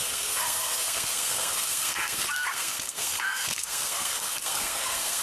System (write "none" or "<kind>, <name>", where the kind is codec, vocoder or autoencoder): codec, SNAC